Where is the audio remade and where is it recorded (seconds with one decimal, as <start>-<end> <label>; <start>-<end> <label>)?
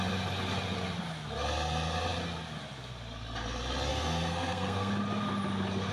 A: 0.0-3.9 recorded; 3.9-4.9 remade; 4.9-5.9 recorded